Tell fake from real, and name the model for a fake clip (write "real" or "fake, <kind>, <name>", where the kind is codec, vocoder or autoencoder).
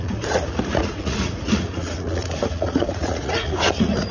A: fake, vocoder, Vocos